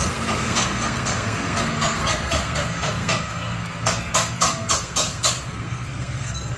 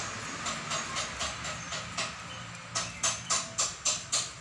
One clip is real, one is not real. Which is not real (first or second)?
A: first